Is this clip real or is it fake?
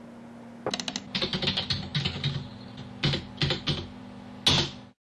real